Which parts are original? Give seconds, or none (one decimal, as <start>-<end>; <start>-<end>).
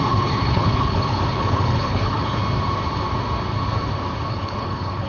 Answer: 2.4-4.3